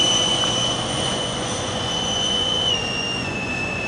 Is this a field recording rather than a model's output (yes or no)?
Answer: no